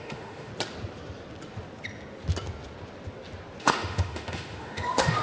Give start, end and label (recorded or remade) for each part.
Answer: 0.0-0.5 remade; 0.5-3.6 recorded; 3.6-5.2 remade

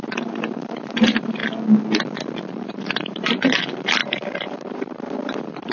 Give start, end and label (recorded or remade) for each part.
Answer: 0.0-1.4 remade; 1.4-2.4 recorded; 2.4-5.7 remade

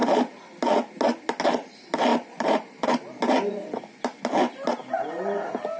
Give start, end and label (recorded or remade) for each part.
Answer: 0.0-2.1 recorded; 2.1-2.9 remade; 2.9-5.8 recorded